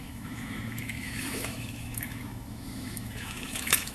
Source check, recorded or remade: remade